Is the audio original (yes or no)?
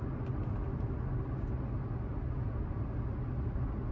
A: yes